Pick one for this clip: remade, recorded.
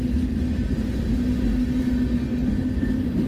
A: recorded